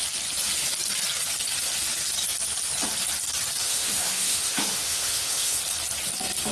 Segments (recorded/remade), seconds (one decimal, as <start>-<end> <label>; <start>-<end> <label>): 0.0-3.6 recorded; 3.6-5.6 remade; 5.6-6.5 recorded

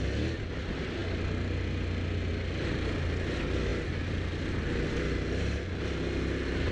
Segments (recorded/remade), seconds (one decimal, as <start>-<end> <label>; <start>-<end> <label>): 0.0-6.7 recorded